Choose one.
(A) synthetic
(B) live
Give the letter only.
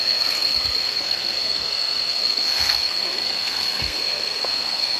A